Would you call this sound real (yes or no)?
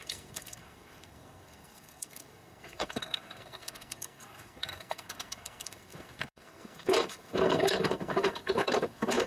no